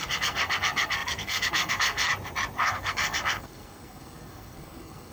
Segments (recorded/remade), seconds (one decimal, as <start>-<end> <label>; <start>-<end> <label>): 0.0-2.1 remade; 2.1-2.6 recorded; 2.6-5.1 remade